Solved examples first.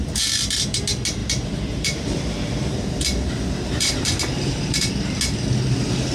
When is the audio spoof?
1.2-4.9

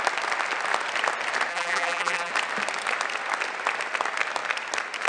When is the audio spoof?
1.5-2.3

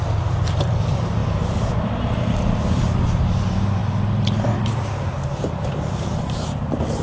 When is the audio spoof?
0.0-7.0

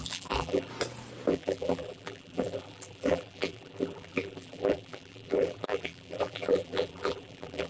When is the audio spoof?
0.0-0.7; 1.3-7.7

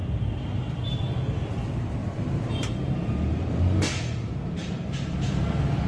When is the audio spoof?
2.0-5.5

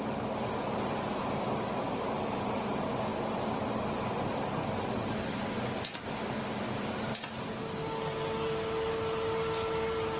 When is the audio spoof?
none

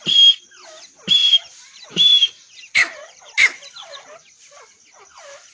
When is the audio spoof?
0.9-4.2